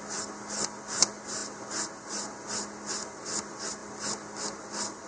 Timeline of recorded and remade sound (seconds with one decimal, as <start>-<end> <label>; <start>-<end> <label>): 0.0-5.1 recorded